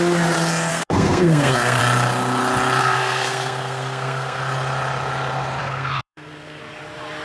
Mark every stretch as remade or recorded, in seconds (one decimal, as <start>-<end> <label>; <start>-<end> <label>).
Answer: 0.0-0.7 recorded; 0.7-1.8 remade; 1.8-2.8 recorded; 2.8-4.4 remade; 4.4-5.6 recorded; 5.6-6.6 remade; 6.6-7.2 recorded